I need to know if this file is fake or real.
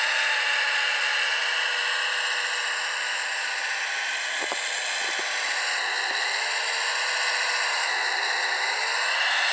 real